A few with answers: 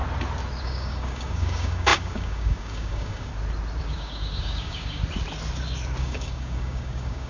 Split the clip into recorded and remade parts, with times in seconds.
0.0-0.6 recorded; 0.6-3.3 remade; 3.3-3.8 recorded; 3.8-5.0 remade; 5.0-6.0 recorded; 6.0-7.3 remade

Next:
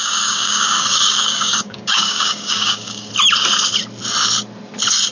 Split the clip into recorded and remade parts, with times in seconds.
0.0-3.1 remade; 3.1-5.1 recorded

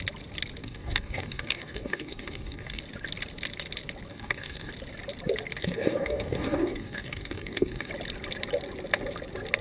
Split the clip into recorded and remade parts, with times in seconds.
0.0-0.6 recorded; 0.6-2.8 remade; 2.8-4.1 recorded; 4.1-4.7 remade; 4.7-5.6 recorded; 5.6-7.9 remade; 7.9-9.6 recorded